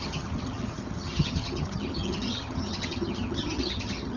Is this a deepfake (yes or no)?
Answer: yes